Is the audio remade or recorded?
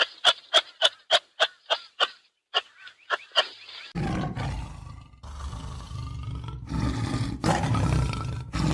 recorded